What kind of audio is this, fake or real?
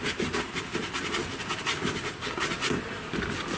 real